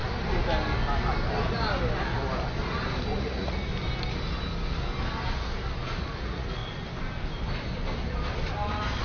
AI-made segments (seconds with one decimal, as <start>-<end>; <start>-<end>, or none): 3.2-3.7; 6.0-6.6